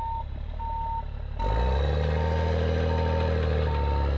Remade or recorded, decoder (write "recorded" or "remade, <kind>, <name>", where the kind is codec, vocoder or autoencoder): recorded